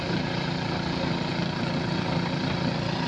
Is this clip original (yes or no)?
yes